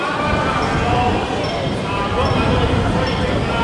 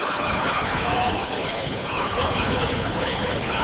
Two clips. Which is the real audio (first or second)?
first